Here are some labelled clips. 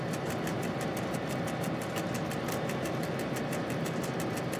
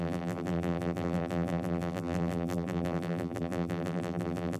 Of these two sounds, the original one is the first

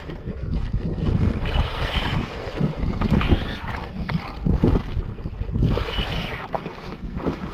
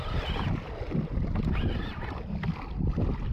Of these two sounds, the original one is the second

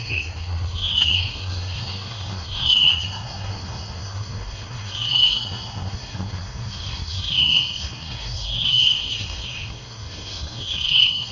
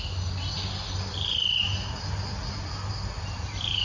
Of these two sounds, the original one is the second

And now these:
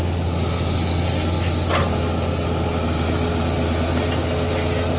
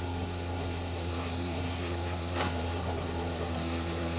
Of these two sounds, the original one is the first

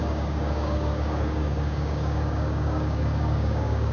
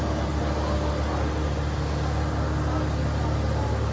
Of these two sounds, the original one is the second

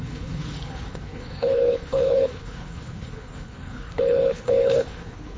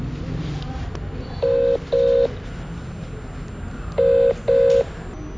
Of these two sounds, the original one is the second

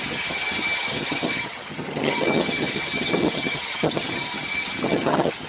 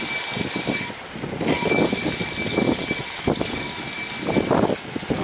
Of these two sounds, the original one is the second